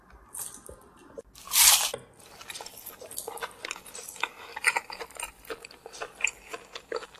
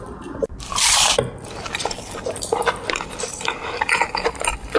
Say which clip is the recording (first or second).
first